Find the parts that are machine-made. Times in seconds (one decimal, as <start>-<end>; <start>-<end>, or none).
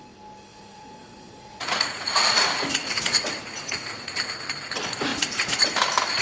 0.5-4.2; 5.1-5.6